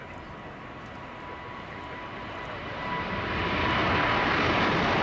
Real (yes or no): yes